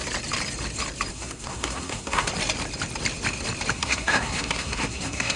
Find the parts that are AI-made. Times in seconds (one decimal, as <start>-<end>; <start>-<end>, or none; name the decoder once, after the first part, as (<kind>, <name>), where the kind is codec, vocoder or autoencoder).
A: 1.1-2.3 (codec, SNAC); 3.7-5.4